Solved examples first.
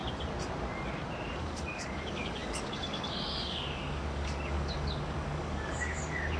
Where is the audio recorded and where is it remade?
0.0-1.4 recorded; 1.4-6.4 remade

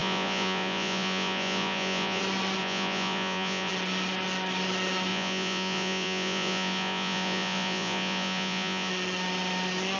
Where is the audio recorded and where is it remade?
0.0-2.2 remade; 2.2-2.6 recorded; 2.6-3.7 remade; 3.7-5.1 recorded; 5.1-8.9 remade; 8.9-10.0 recorded

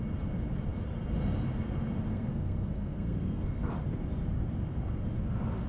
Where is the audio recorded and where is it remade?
0.0-2.1 recorded; 2.1-3.7 remade; 3.7-5.7 recorded

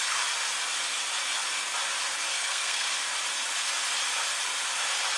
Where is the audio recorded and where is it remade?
0.0-2.3 recorded; 2.3-2.9 remade; 2.9-5.2 recorded

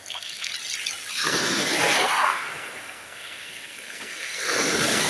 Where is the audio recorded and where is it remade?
0.0-0.5 remade; 0.5-1.1 recorded; 1.1-5.1 remade

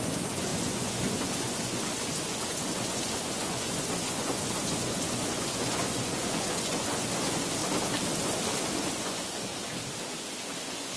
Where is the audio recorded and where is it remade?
0.0-7.6 remade; 7.6-8.8 recorded; 8.8-9.5 remade; 9.5-10.6 recorded; 10.6-11.0 remade